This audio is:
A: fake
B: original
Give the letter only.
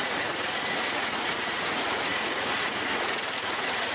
A